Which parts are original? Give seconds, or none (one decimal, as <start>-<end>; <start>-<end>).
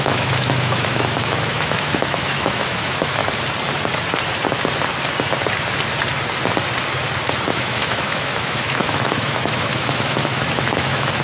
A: 3.2-7.5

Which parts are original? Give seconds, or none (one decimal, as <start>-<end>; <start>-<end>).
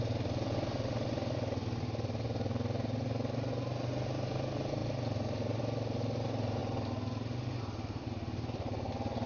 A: 0.0-9.3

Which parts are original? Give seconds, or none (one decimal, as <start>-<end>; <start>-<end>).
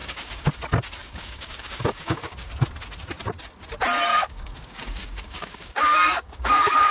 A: 0.5-1.0; 2.5-4.1